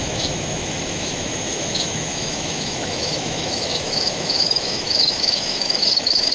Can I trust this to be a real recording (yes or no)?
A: no